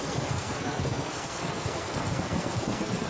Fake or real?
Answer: fake